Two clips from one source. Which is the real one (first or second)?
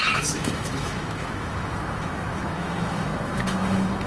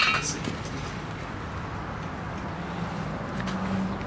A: second